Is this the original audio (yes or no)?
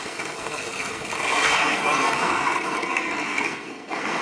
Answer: no